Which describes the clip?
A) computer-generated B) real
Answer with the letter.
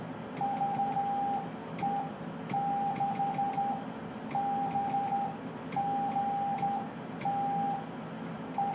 B